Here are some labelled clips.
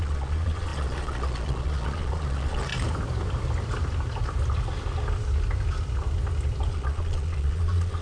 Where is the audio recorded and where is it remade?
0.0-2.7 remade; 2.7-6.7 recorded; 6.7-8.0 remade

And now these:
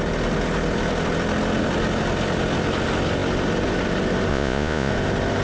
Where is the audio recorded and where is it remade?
0.0-4.3 recorded; 4.3-4.9 remade; 4.9-5.4 recorded

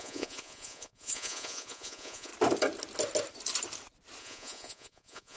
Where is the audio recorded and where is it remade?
0.0-2.3 remade; 2.3-4.2 recorded; 4.2-5.4 remade

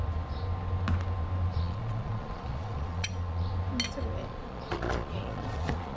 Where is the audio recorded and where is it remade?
0.0-1.5 recorded; 1.5-3.5 remade; 3.5-4.2 recorded; 4.2-6.0 remade

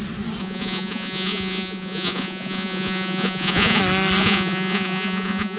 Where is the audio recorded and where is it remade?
0.0-0.4 recorded; 0.4-3.8 remade; 3.8-4.2 recorded; 4.2-5.6 remade

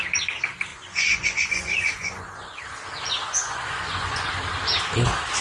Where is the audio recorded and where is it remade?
0.0-0.7 recorded; 0.7-2.6 remade; 2.6-3.3 recorded; 3.3-4.3 remade; 4.3-5.4 recorded